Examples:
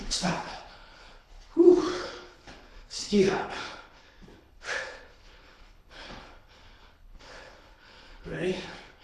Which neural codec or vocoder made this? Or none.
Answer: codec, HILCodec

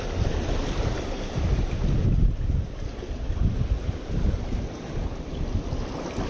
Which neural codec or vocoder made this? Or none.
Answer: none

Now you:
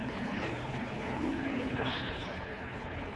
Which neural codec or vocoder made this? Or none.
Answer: codec, HILCodec